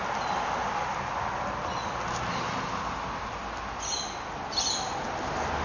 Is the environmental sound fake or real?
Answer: real